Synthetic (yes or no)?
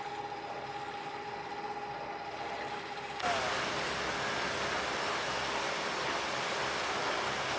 no